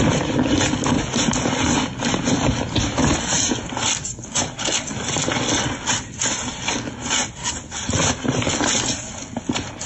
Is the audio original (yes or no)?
yes